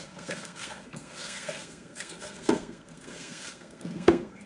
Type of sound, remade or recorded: remade